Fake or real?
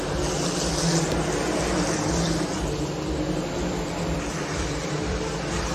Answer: real